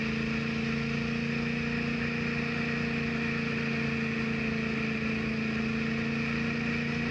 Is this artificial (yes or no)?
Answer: no